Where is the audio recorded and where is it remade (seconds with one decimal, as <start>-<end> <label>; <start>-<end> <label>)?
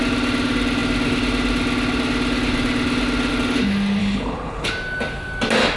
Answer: 0.0-4.0 recorded; 4.0-4.7 remade; 4.7-5.8 recorded